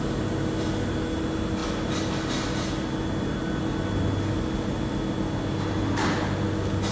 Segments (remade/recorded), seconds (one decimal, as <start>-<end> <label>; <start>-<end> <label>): 0.0-6.9 recorded